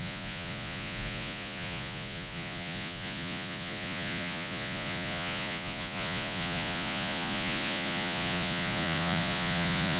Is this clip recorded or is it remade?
remade